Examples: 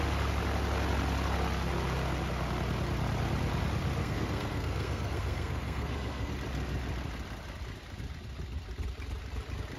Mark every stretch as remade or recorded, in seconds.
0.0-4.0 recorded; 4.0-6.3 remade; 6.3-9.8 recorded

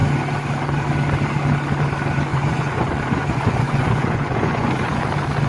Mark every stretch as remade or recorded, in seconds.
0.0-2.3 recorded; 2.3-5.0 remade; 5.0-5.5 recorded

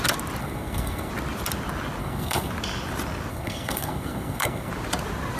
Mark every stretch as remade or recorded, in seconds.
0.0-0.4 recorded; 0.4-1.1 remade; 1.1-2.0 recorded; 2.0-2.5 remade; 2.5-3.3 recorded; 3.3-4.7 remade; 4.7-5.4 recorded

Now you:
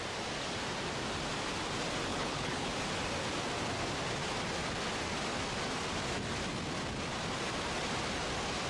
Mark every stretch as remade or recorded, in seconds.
0.0-2.1 recorded; 2.1-2.7 remade; 2.7-8.7 recorded

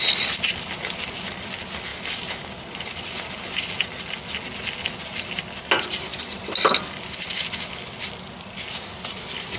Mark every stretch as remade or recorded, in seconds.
0.0-9.6 recorded

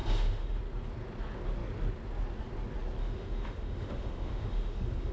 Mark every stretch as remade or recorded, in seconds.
0.0-0.6 remade; 0.6-3.0 recorded; 3.0-5.1 remade